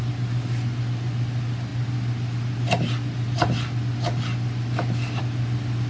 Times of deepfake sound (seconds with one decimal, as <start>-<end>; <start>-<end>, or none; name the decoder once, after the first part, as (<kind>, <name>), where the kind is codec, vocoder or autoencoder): none